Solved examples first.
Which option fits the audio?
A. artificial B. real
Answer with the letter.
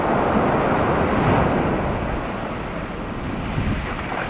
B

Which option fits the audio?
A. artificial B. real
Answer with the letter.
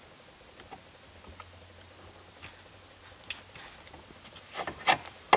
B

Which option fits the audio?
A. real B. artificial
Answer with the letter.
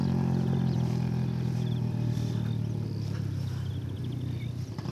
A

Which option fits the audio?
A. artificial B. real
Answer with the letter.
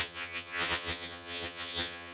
A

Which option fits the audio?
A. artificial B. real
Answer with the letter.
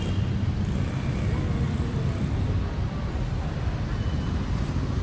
B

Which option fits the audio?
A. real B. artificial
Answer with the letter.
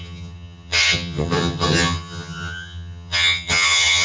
B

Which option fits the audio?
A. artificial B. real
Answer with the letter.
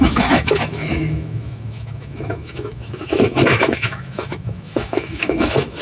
A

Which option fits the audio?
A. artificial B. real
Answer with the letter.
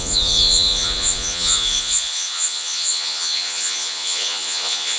A